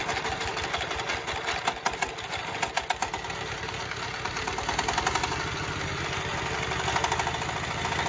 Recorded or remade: recorded